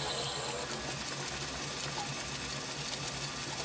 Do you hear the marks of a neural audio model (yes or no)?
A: no